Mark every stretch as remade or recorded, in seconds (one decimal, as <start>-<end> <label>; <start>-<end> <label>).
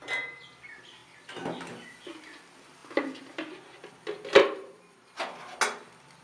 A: 0.0-4.4 recorded; 4.4-5.2 remade; 5.2-6.2 recorded